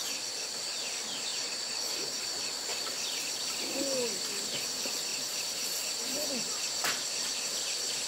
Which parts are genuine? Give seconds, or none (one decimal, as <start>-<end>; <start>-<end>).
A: 0.0-1.3; 2.2-5.1